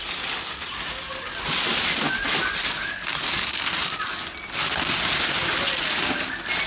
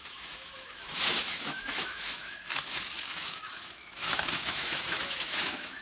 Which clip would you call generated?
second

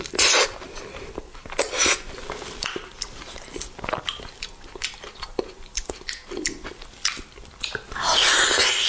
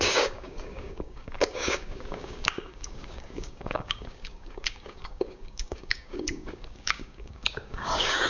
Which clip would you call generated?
second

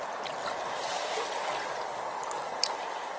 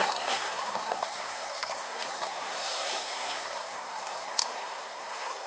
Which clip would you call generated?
second